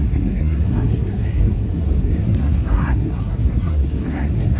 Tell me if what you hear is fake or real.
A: fake